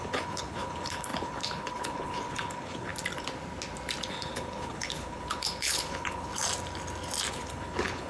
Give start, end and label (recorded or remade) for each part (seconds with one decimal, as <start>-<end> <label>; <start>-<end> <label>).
0.0-2.9 remade; 2.9-4.1 recorded; 4.1-6.3 remade; 6.3-7.3 recorded; 7.3-8.1 remade